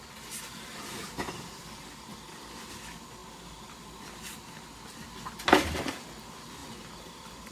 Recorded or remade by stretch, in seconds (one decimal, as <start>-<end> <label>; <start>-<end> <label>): 0.0-6.6 recorded; 6.6-7.5 remade